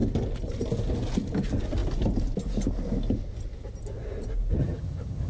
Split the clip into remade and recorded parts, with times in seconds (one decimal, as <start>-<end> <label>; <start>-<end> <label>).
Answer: 0.0-4.6 recorded; 4.6-5.3 remade